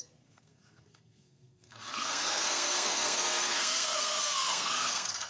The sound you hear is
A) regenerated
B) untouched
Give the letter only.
A